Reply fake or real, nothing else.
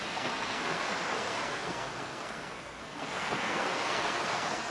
fake